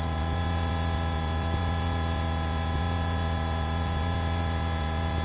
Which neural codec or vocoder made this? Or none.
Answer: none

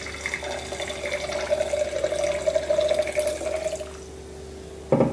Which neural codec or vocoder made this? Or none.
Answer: none